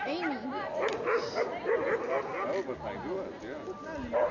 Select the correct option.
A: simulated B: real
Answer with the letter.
B